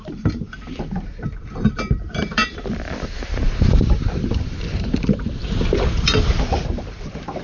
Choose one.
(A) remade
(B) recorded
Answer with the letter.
A